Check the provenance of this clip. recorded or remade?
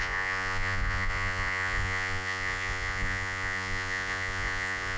remade